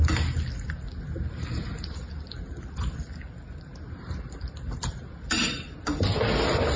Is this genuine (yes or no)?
yes